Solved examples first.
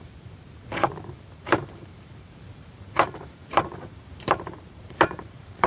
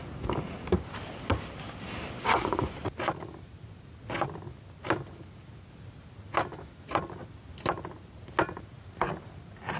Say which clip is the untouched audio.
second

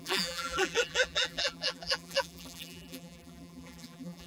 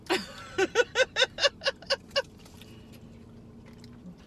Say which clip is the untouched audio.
second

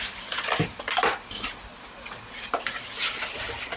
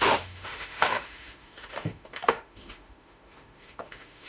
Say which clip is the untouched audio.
first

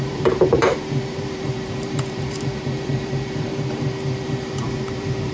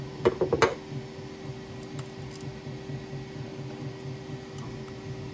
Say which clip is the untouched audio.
second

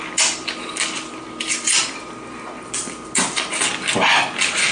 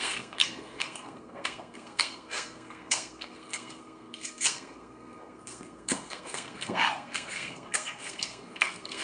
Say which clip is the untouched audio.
first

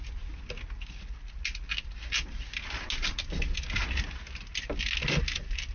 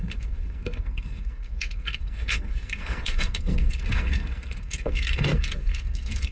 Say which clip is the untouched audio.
first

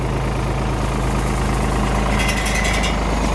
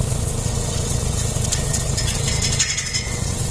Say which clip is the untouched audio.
first